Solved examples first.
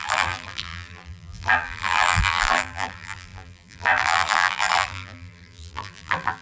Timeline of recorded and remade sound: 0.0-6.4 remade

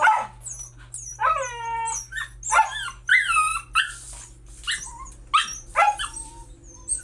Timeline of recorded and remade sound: 0.0-7.0 recorded

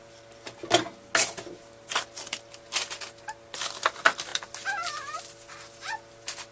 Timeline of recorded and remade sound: 0.0-6.5 recorded